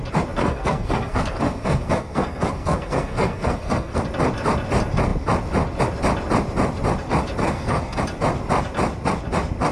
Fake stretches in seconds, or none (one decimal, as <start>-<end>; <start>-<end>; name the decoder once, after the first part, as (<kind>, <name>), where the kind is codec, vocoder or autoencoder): 0.4-4.0 (codec, SNAC); 7.4-8.0